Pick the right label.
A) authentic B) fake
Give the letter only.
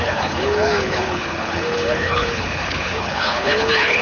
B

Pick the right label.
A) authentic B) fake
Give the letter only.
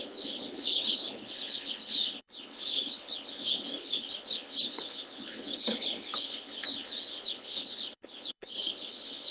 B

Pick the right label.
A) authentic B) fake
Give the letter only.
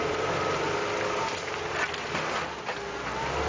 A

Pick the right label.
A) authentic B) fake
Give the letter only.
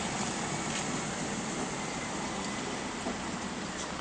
A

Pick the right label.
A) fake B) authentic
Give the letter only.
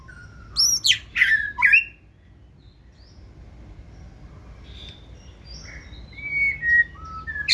B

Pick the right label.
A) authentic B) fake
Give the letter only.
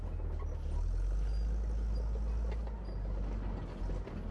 A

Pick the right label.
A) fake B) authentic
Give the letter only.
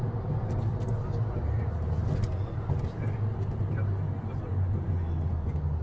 B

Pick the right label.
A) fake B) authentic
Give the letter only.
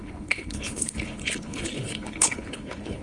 A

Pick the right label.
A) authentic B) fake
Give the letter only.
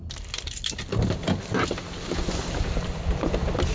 A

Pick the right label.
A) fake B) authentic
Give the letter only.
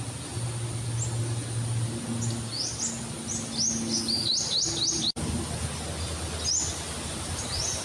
B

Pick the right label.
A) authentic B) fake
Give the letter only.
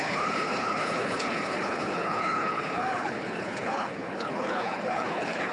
B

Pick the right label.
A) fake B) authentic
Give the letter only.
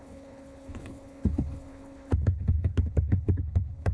A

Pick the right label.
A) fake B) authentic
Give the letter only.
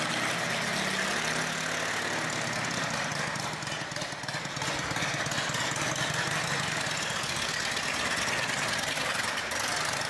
B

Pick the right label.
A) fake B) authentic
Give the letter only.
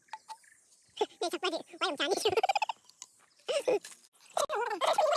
B